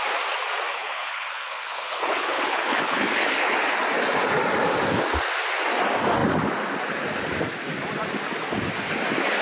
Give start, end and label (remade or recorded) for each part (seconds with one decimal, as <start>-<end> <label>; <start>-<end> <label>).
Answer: 0.0-0.7 recorded; 0.7-3.7 remade; 3.7-9.4 recorded